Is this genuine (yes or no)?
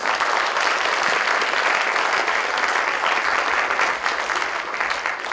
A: yes